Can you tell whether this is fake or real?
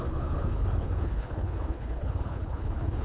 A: fake